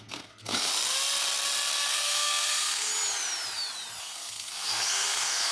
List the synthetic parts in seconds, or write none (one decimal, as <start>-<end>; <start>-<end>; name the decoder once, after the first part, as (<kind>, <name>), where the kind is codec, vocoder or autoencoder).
0.0-0.7 (codec, SNAC); 1.9-2.9; 4.0-5.5